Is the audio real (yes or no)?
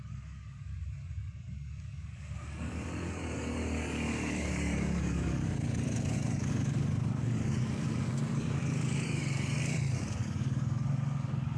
no